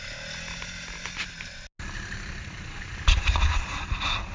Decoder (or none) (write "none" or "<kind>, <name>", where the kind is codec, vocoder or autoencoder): none